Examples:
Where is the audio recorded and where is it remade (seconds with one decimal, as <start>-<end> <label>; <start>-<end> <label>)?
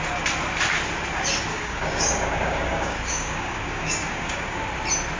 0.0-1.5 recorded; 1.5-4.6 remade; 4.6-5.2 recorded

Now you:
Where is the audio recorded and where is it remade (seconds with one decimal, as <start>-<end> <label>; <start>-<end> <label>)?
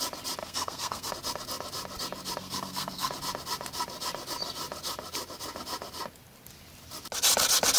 0.0-0.4 recorded; 0.4-1.1 remade; 1.1-2.4 recorded; 2.4-3.1 remade; 3.1-7.8 recorded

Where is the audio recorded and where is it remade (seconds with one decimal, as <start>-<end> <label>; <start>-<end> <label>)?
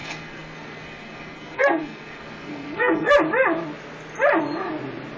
0.0-3.1 remade; 3.1-5.2 recorded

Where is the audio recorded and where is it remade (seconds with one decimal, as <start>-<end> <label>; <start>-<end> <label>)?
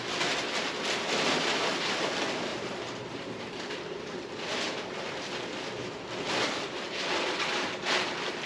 0.0-2.5 recorded; 2.5-4.3 remade; 4.3-8.5 recorded